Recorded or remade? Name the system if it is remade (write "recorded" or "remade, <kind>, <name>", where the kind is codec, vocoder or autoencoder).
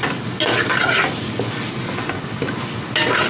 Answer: recorded